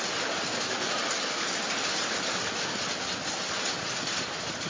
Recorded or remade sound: recorded